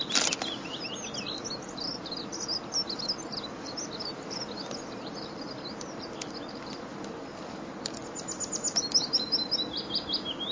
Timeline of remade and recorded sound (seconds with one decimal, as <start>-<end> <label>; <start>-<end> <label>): 0.0-10.5 recorded